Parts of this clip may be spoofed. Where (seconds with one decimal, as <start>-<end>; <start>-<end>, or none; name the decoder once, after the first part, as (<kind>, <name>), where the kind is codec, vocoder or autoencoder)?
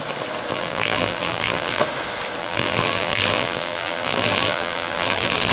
0.5-1.8 (vocoder, BigVGAN v2); 2.4-5.5